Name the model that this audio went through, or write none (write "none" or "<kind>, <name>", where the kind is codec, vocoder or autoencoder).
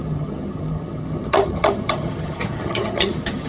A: vocoder, HiFi-GAN